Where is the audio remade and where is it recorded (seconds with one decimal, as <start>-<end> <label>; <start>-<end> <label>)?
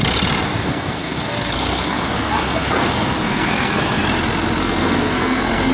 0.0-0.6 recorded; 0.6-4.0 remade; 4.0-4.6 recorded; 4.6-5.7 remade